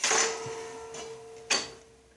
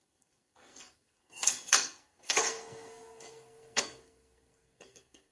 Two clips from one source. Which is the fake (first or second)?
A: second